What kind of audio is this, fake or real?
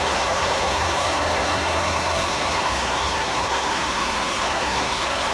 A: fake